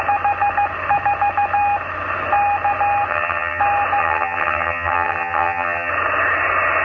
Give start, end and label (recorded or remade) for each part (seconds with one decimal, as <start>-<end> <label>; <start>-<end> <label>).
0.0-3.1 recorded; 3.1-3.6 remade; 3.6-4.0 recorded; 4.0-5.9 remade; 5.9-6.8 recorded